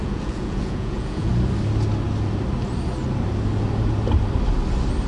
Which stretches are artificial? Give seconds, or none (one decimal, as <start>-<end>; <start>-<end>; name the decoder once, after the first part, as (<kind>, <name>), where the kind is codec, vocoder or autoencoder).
0.0-1.3 (vocoder, Vocos)